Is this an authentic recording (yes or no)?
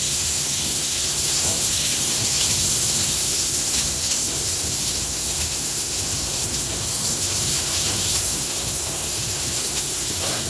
no